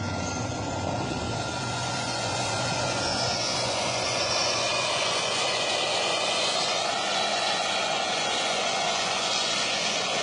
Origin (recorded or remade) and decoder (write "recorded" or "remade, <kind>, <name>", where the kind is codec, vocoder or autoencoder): remade, vocoder, Vocos